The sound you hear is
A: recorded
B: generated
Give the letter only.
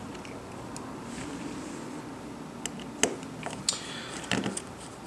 A